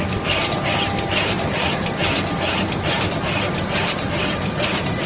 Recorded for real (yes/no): no